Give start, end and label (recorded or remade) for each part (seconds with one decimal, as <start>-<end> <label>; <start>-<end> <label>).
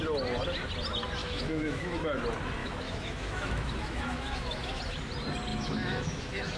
0.0-1.2 recorded; 1.2-2.2 remade; 2.2-2.6 recorded; 2.6-4.8 remade; 4.8-5.5 recorded; 5.5-6.6 remade